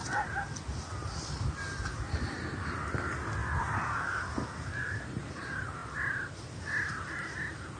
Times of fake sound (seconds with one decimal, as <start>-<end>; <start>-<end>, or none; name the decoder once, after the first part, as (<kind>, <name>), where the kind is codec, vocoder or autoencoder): 0.0-3.4 (vocoder, BigVGAN v2); 5.0-5.8; 7.0-7.8